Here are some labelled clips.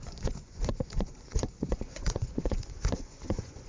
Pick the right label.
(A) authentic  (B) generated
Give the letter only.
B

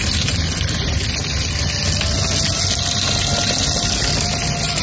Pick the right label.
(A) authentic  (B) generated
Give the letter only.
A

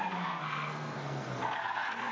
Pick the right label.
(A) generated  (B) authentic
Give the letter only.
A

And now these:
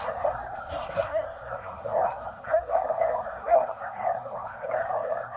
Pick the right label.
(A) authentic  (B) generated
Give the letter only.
B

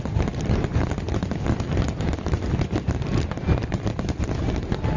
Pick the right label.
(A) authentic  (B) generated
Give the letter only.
A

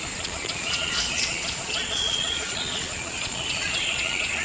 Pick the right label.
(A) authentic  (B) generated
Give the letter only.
B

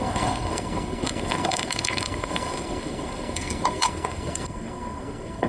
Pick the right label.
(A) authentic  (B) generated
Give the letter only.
B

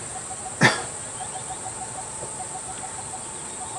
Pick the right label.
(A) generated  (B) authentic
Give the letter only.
B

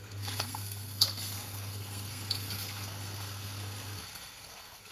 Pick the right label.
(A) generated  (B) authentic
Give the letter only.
A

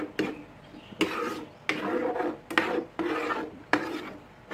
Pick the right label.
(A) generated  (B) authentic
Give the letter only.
B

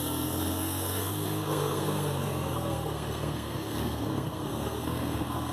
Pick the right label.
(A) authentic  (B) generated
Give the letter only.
B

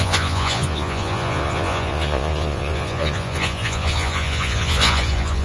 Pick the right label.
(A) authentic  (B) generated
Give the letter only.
B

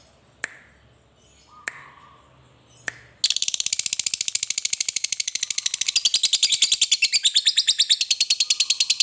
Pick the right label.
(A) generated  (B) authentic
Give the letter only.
B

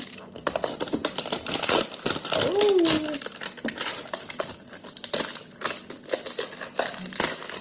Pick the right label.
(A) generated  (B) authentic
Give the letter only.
B